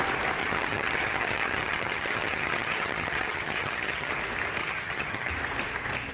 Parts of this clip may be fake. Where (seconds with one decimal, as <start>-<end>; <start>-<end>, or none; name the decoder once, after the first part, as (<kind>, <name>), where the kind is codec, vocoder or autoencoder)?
0.4-4.1 (vocoder, HiFi-GAN); 4.6-5.3

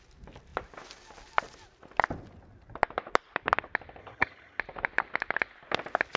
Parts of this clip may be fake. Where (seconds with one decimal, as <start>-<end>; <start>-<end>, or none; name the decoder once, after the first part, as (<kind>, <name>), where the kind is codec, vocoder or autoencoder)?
4.0-4.6 (vocoder, HiFi-GAN)

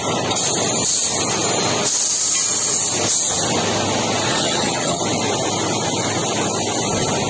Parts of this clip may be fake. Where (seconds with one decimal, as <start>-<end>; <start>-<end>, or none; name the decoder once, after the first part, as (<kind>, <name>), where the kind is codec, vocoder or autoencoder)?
4.3-5.0 (vocoder, HiFi-GAN)